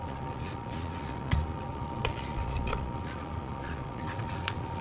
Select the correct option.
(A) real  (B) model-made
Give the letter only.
B